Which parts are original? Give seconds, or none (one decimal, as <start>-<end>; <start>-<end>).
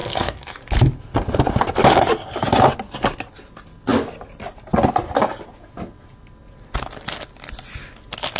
0.6-8.4